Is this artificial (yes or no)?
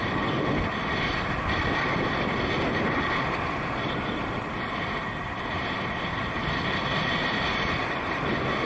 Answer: no